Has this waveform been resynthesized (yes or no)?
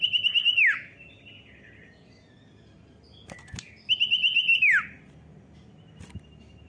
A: no